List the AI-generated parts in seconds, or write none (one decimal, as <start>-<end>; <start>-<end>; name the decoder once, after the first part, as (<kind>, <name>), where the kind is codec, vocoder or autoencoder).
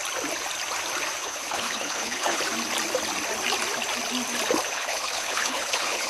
1.2-2.4 (codec, HILCodec); 4.7-6.1